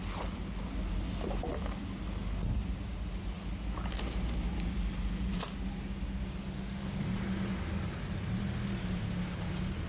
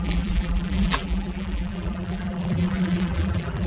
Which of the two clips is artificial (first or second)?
second